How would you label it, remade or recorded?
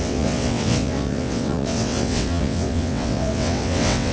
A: remade